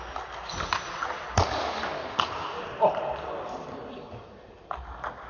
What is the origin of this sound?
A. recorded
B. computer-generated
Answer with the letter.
A